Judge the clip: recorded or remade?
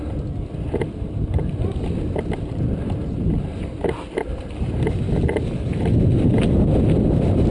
recorded